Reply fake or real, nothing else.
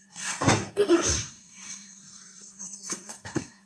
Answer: fake